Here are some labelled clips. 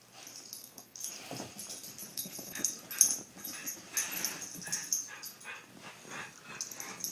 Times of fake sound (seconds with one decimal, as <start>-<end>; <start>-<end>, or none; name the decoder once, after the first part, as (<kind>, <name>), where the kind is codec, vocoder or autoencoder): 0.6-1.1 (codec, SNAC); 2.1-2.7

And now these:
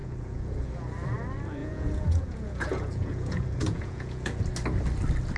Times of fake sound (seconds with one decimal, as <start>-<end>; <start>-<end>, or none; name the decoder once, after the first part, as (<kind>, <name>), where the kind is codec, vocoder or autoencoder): 0.0-0.7 (vocoder, Vocos); 1.6-4.4

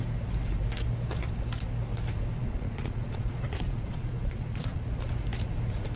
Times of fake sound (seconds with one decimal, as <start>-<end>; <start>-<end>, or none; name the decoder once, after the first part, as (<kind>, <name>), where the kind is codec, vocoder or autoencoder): 2.4-4.9 (vocoder, Vocos)

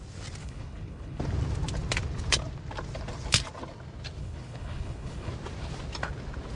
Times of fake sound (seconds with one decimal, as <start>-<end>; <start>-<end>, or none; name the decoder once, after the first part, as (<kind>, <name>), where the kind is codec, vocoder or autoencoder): 0.4-1.2 (codec, HILCodec); 4.2-5.3

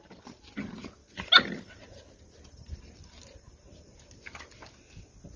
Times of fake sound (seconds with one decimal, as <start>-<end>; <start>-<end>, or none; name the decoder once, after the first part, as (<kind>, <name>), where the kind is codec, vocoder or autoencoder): none